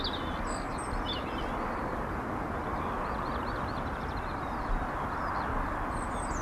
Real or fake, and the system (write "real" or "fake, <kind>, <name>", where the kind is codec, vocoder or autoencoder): real